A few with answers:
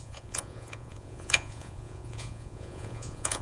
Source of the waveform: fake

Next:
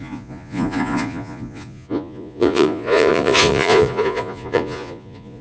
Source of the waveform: fake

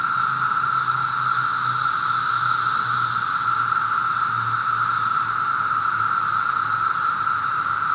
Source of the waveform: real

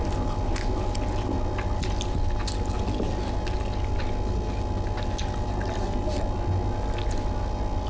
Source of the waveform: real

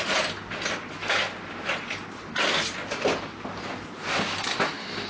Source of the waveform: real